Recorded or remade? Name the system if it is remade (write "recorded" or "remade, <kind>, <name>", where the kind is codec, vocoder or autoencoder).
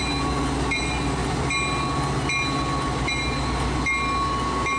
recorded